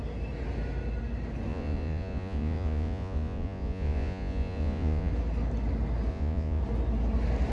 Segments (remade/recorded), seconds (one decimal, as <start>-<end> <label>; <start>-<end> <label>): 0.0-1.5 recorded; 1.5-5.1 remade; 5.1-6.1 recorded; 6.1-6.6 remade; 6.6-7.5 recorded